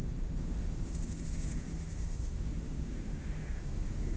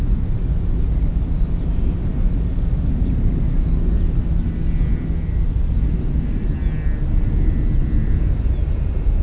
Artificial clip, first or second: first